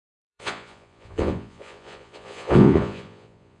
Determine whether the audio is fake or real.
fake